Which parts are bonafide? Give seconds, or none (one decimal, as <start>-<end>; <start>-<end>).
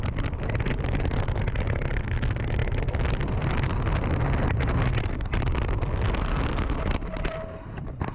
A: 0.0-8.1